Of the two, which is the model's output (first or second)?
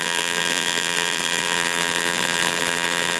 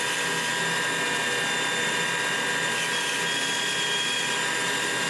first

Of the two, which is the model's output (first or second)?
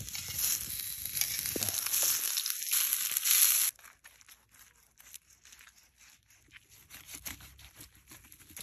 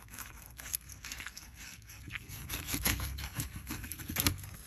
second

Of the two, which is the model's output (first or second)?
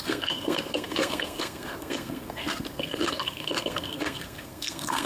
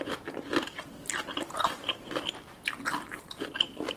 first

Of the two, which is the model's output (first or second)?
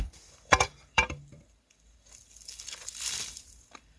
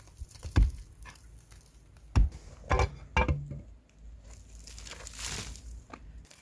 first